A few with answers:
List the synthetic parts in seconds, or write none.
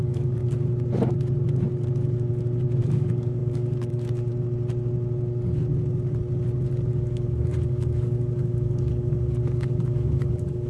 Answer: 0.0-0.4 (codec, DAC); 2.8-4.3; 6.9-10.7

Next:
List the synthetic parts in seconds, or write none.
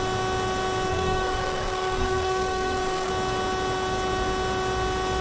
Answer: 0.9-3.1 (codec, SNAC)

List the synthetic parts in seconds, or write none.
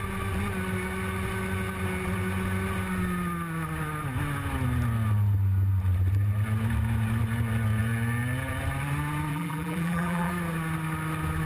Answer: 9.3-10.3 (vocoder, BigVGAN v2)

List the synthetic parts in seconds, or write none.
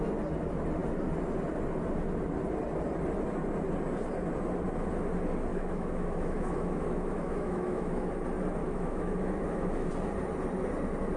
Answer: 5.5-8.1 (autoencoder, DAC-VAE); 8.6-9.9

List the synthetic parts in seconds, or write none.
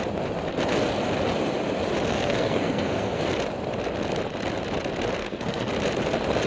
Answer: 2.1-3.2 (codec, SNAC); 5.2-5.7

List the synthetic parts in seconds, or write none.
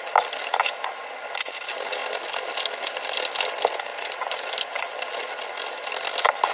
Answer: 3.9-4.7 (vocoder, BigVGAN v2)